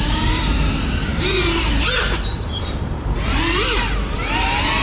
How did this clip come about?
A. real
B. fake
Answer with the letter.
B